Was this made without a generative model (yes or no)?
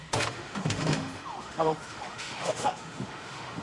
no